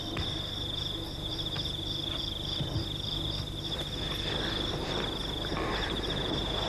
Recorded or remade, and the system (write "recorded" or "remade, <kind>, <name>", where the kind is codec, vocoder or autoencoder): recorded